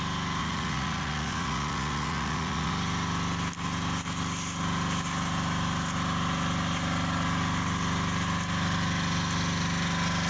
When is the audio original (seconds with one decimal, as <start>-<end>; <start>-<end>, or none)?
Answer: 0.0-0.4; 2.7-10.3